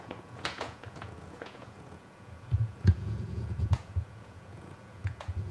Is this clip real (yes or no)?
no